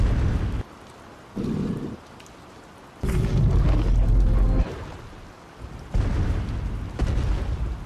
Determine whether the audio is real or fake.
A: real